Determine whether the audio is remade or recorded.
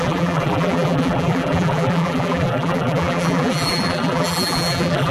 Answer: remade